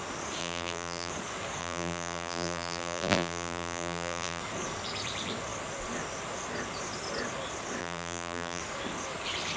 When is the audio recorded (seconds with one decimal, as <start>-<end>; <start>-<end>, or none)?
0.0-0.4; 1.1-1.6; 4.4-7.8; 8.6-9.6